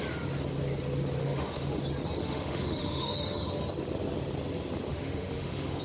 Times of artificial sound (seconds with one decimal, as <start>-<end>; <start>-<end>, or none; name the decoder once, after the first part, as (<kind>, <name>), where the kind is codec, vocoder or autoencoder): 1.2-1.8 (autoencoder, DAC-VAE); 2.2-3.5; 4.9-5.8